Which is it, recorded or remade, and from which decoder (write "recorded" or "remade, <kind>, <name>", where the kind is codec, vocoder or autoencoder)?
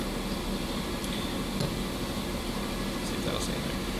remade, vocoder, BigVGAN v2